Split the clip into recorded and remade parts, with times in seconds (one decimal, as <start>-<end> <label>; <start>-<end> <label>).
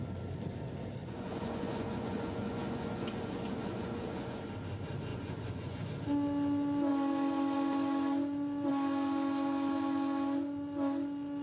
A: 0.0-1.0 recorded; 1.0-4.4 remade; 4.4-5.1 recorded; 5.1-5.8 remade; 5.8-11.4 recorded